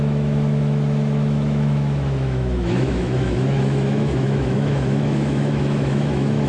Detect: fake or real fake